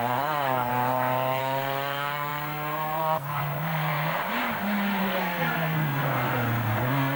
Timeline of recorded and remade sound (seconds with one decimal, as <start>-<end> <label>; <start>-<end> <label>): 0.0-0.7 remade; 0.7-1.4 recorded; 1.4-4.2 remade; 4.2-5.0 recorded; 5.0-7.2 remade